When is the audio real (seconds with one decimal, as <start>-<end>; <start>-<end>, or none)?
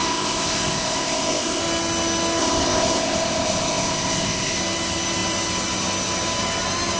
1.6-2.4; 4.6-7.0